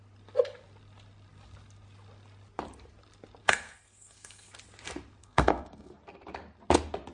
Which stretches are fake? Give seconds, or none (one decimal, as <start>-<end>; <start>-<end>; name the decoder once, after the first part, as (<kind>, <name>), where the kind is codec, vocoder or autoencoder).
3.4-4.5 (codec, SNAC); 5.2-5.9